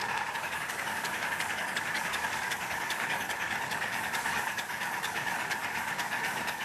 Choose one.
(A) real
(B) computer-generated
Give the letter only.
B